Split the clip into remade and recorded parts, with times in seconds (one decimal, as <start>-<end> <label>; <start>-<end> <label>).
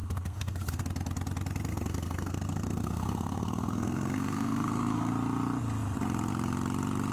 0.0-0.8 remade; 0.8-1.7 recorded; 1.7-5.1 remade; 5.1-7.1 recorded